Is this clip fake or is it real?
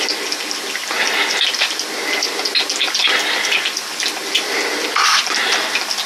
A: real